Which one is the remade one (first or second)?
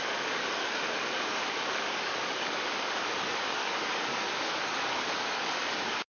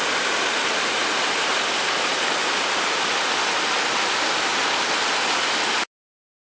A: first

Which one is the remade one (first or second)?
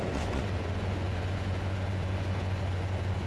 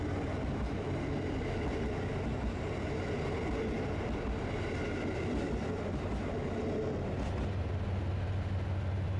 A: first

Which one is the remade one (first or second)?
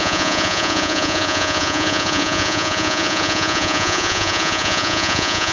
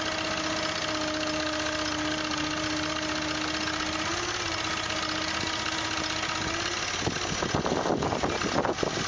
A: first